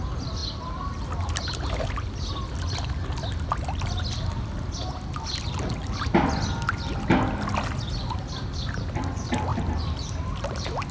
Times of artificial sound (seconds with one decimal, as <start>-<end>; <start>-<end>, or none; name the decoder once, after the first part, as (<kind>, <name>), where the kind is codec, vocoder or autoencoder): 0.4-1.3 (vocoder, BigVGAN v2); 9.5-10.9